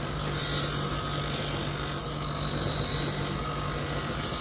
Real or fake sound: real